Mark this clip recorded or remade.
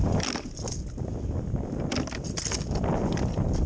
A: recorded